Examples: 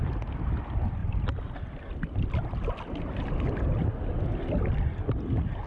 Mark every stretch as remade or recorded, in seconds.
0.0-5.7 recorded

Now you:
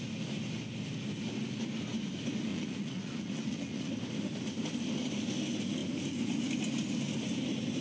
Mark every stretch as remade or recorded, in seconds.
0.0-2.5 recorded; 2.5-3.9 remade; 3.9-7.8 recorded